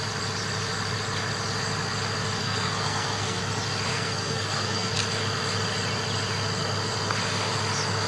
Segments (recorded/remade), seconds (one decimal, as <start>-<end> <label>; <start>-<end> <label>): 0.0-2.4 recorded; 2.4-3.4 remade; 3.4-3.9 recorded; 3.9-4.9 remade; 4.9-8.1 recorded